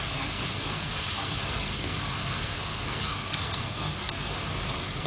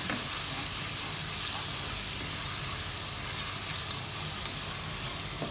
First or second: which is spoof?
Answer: first